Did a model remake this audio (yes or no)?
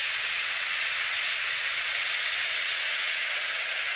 yes